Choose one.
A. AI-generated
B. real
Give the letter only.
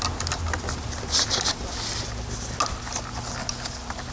B